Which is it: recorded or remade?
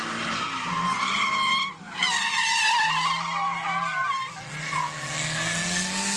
recorded